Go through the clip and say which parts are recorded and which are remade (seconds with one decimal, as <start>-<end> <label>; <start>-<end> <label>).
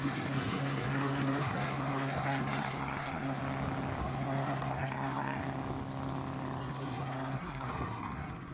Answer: 0.0-3.4 remade; 3.4-4.0 recorded; 4.0-5.4 remade; 5.4-6.6 recorded; 6.6-8.5 remade